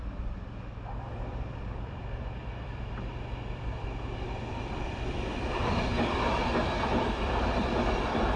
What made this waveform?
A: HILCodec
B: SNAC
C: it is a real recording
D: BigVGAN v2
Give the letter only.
D